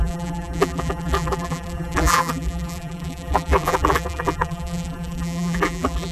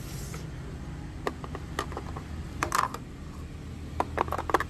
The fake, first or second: first